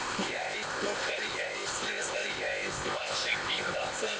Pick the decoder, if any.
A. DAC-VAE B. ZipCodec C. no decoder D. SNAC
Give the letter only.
B